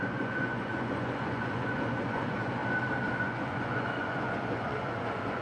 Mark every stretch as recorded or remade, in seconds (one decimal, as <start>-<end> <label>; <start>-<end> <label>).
0.0-2.6 remade; 2.6-3.2 recorded; 3.2-5.4 remade